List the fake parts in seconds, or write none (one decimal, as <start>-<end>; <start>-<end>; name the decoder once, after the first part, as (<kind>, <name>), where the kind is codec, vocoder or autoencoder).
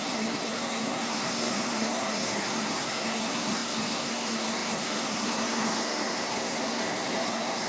0.0-7.7 (codec, SNAC)